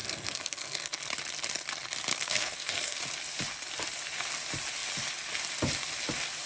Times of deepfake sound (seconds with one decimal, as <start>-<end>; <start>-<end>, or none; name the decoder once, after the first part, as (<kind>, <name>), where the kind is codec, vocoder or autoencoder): 0.0-1.0 (codec, SNAC); 2.1-3.0